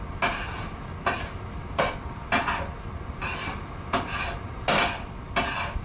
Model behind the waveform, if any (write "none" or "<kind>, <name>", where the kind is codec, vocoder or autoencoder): none